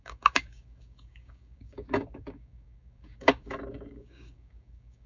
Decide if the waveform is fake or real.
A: fake